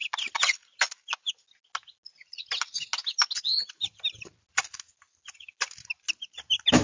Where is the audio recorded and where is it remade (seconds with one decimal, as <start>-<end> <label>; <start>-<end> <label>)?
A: 0.0-6.8 recorded